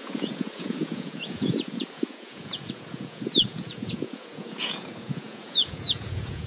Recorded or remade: remade